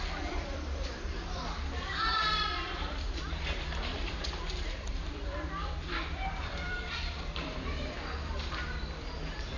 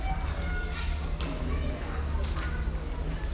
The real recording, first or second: second